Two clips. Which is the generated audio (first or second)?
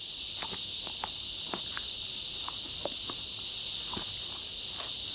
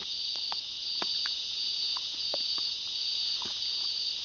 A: second